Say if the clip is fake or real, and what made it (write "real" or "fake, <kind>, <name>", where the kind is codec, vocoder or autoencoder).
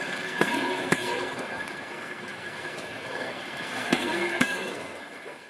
fake, codec, SNAC